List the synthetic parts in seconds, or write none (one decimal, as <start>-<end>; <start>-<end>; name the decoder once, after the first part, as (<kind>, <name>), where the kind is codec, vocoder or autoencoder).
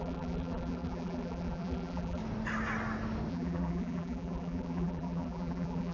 0.0-2.2 (vocoder, BigVGAN v2); 3.3-5.9